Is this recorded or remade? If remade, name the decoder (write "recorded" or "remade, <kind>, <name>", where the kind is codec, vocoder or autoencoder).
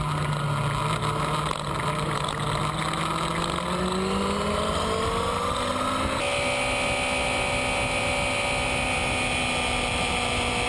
recorded